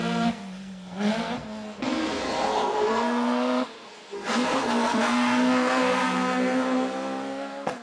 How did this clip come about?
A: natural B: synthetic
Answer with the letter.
B